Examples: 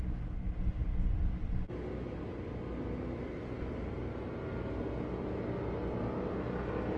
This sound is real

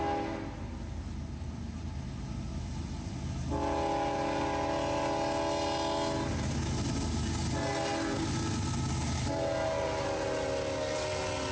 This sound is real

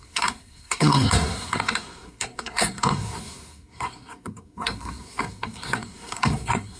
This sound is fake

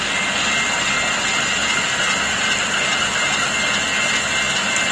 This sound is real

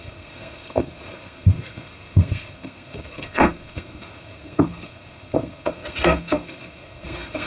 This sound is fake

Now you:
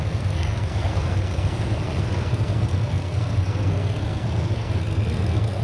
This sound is fake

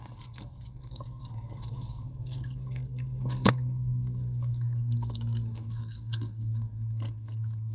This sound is fake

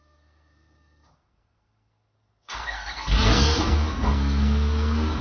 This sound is fake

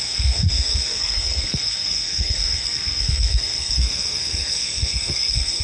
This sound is fake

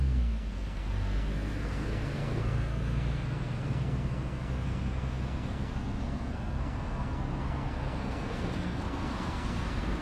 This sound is fake